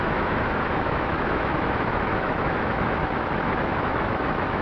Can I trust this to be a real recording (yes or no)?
no